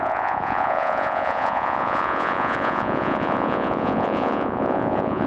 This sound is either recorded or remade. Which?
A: remade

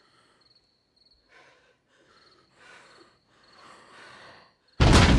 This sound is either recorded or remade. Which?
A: recorded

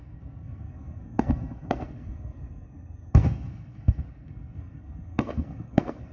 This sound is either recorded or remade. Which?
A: remade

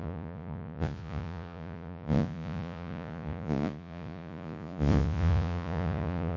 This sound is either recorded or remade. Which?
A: remade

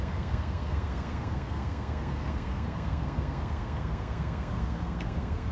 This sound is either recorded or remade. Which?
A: remade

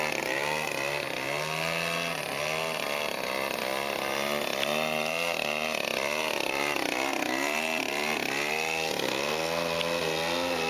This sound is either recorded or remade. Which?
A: recorded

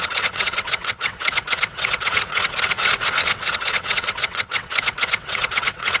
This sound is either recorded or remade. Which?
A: remade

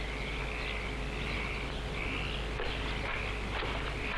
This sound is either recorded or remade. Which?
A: recorded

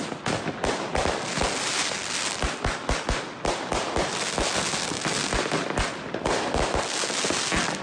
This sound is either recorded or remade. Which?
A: recorded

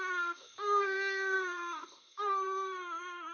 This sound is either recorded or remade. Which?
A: remade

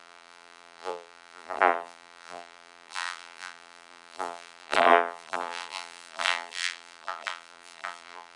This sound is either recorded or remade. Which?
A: remade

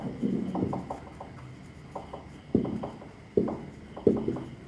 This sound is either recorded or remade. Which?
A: recorded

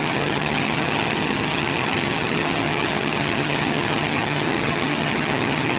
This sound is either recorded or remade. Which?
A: remade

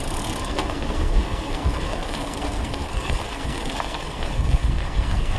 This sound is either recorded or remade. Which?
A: remade